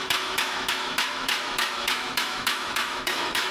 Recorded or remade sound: remade